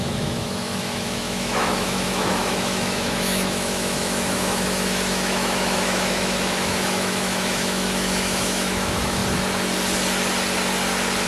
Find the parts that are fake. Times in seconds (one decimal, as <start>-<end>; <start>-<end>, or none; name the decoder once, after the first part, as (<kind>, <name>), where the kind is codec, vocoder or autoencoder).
0.0-9.2 (autoencoder, DAC-VAE)